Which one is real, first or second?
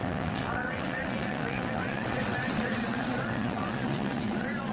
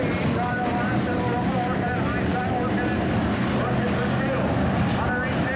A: second